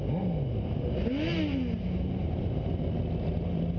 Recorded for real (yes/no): yes